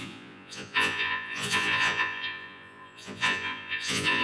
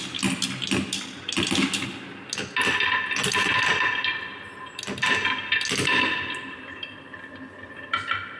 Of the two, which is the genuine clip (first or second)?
second